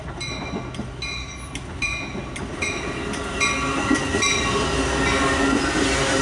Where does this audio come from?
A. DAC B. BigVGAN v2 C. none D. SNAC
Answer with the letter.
C